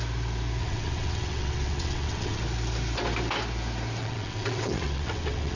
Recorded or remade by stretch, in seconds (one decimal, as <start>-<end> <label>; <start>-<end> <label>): 0.0-0.6 recorded; 0.6-2.4 remade; 2.4-4.0 recorded; 4.0-5.6 remade